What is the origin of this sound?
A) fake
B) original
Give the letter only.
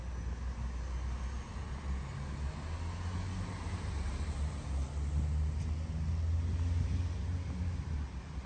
B